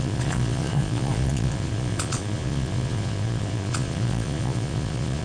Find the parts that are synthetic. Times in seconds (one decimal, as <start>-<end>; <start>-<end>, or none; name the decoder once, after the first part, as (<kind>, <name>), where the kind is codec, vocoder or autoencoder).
0.0-5.2 (vocoder, Vocos)